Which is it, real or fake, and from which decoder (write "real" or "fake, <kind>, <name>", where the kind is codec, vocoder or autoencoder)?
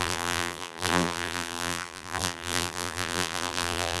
fake, vocoder, BigVGAN v2